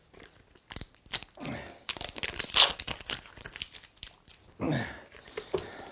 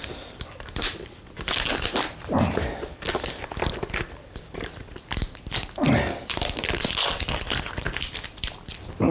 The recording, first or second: first